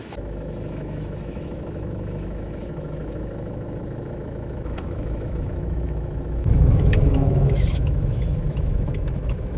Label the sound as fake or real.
fake